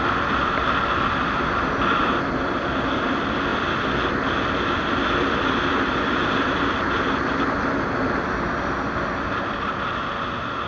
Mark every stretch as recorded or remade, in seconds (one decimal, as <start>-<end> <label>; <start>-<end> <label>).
0.0-10.7 recorded